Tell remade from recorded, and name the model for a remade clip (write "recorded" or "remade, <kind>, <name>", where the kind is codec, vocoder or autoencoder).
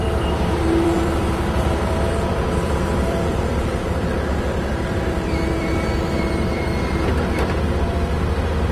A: remade, vocoder, BigVGAN v2